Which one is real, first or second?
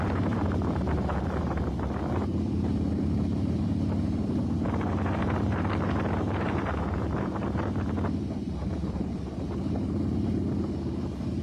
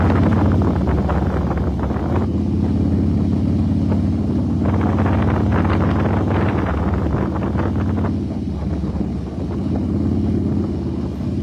second